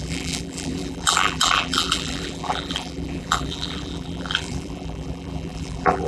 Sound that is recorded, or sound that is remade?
remade